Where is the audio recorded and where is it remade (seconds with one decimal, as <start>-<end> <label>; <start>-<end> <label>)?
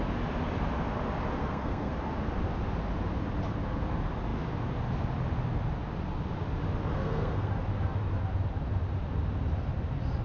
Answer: 0.0-1.4 recorded; 1.4-1.9 remade; 1.9-6.9 recorded; 6.9-7.5 remade; 7.5-10.2 recorded